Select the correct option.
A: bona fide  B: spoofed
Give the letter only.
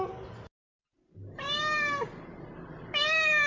A